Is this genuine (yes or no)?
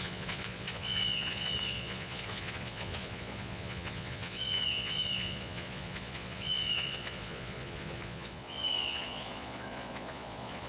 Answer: no